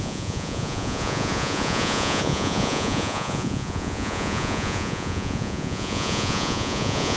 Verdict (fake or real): fake